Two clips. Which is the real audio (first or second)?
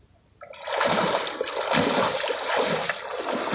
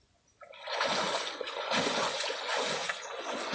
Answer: first